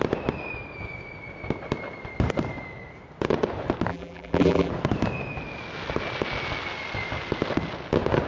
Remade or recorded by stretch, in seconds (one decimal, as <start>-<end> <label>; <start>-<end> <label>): 0.0-3.9 recorded; 3.9-4.7 remade; 4.7-8.3 recorded